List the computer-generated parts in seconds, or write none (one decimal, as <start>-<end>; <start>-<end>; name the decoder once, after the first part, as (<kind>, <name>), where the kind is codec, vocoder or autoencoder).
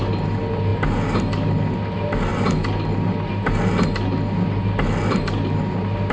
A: none